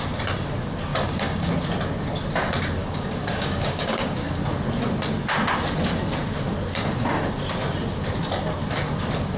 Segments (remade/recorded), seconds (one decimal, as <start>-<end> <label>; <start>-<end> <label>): 0.0-0.9 recorded; 0.9-1.5 remade; 1.5-2.8 recorded; 2.8-4.3 remade; 4.3-9.4 recorded